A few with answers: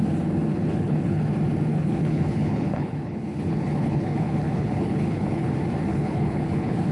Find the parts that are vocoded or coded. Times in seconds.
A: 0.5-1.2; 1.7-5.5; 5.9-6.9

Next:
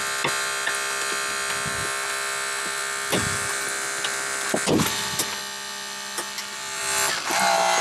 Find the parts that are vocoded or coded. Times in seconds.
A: none